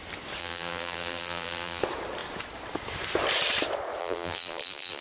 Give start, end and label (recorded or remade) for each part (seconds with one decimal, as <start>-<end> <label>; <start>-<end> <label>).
0.0-0.4 recorded; 0.4-1.8 remade; 1.8-4.0 recorded; 4.0-5.0 remade